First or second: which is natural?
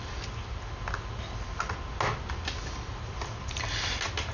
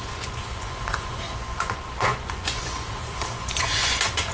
first